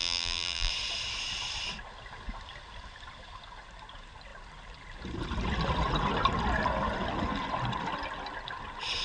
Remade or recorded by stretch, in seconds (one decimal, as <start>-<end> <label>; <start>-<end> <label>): 0.0-0.7 remade; 0.7-9.0 recorded